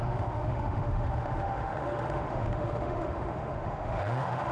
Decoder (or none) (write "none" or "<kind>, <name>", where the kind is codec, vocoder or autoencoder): autoencoder, DAC-VAE